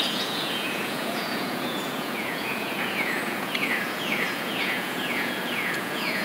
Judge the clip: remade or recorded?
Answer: remade